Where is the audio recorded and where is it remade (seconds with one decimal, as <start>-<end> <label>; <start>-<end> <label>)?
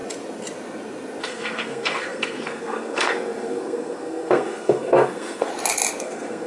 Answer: 0.0-1.2 recorded; 1.2-5.5 remade; 5.5-6.0 recorded; 6.0-6.5 remade